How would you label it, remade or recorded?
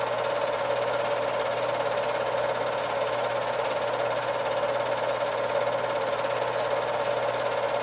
recorded